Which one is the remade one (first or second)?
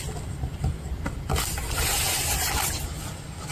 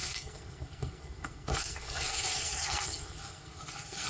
second